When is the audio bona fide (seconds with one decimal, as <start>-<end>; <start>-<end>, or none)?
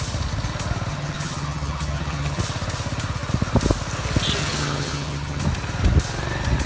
0.0-0.9; 2.4-4.4; 5.4-6.7